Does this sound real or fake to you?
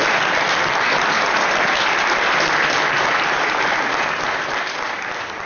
real